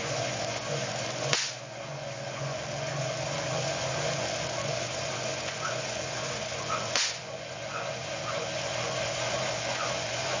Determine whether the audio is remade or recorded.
remade